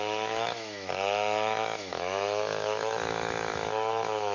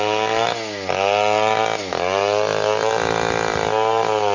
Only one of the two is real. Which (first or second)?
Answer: second